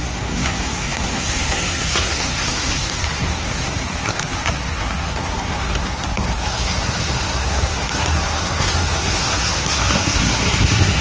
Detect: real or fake fake